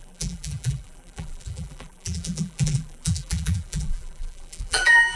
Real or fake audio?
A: fake